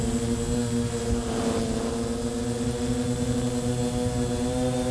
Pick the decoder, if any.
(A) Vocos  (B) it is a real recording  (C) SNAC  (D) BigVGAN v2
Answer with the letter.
B